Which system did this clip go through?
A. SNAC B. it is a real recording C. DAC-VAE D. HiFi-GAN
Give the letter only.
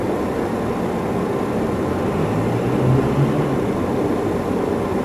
B